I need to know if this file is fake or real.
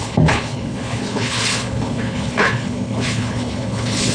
fake